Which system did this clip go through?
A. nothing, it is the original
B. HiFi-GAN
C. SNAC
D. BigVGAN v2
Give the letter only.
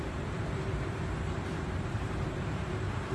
D